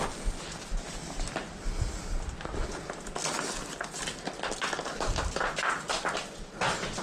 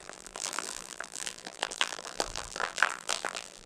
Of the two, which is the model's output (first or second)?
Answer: second